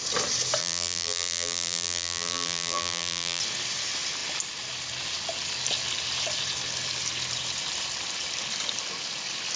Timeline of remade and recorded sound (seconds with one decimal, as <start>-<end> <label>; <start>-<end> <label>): 0.0-0.6 recorded; 0.6-3.4 remade; 3.4-9.6 recorded